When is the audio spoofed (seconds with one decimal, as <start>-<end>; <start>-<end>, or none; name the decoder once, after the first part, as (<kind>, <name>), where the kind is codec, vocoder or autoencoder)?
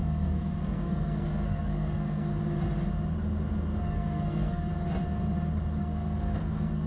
0.0-2.3 (codec, SNAC); 3.8-4.7; 5.8-6.9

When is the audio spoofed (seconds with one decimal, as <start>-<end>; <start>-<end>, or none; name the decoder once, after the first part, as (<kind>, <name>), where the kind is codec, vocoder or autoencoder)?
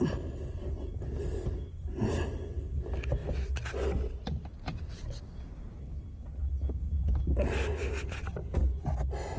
none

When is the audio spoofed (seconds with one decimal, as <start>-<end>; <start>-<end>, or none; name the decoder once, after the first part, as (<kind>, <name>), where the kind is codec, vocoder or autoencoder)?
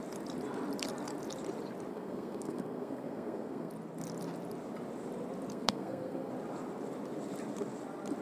1.9-3.7 (codec, SNAC); 5.5-6.3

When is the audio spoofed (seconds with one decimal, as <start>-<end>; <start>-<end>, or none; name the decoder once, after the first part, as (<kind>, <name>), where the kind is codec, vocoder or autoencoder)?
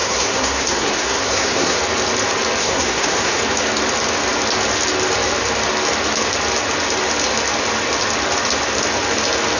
0.0-1.8 (codec, SNAC); 2.6-3.4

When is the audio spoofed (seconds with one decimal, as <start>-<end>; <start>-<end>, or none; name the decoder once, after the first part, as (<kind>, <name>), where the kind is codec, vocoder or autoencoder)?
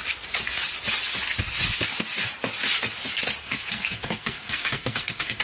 3.4-5.4 (codec, SNAC)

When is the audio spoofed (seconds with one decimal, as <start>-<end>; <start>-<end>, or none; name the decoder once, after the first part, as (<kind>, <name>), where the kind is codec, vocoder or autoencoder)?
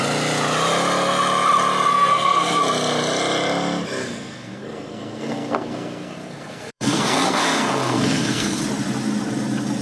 1.9-2.6 (codec, SNAC); 4.0-8.6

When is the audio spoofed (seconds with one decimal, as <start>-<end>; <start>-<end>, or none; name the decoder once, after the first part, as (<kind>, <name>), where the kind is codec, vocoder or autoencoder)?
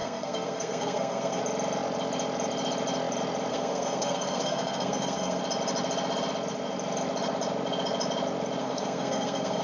0.0-1.4 (codec, SNAC); 3.5-5.4; 8.6-9.6